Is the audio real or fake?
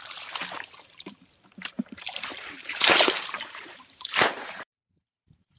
fake